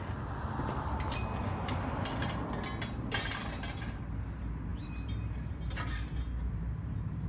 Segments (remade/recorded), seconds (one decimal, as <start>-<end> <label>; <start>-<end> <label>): 0.0-4.7 recorded; 4.7-7.3 remade